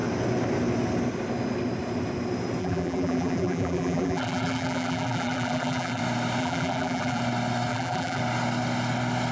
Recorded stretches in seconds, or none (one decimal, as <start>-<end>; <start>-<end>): 0.0-2.6; 6.0-6.4; 7.2-7.7; 8.2-9.3